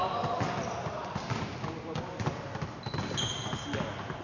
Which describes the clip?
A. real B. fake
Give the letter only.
A